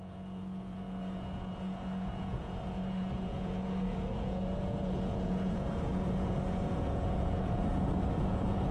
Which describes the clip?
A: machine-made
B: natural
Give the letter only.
A